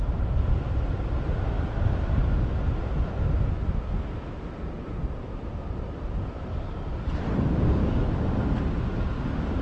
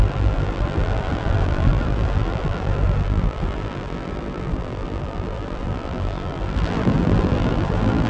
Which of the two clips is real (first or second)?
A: first